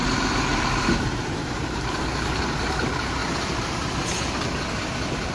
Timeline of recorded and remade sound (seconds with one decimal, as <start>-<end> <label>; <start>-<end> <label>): 0.0-3.2 remade; 3.2-5.3 recorded